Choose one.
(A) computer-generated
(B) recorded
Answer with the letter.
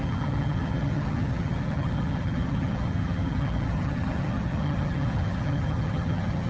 A